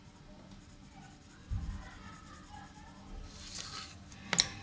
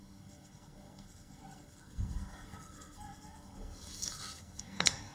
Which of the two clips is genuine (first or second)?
first